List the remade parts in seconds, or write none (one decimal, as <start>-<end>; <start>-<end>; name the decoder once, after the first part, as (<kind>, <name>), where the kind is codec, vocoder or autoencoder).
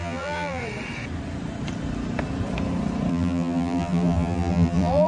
0.0-0.6 (vocoder, BigVGAN v2); 3.1-5.1